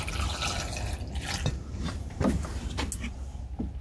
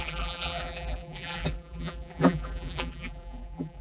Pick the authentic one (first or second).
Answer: first